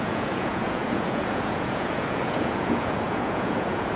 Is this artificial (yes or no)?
yes